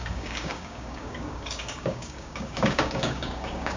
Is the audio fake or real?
fake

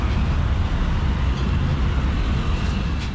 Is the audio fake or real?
real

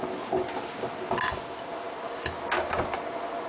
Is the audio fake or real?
real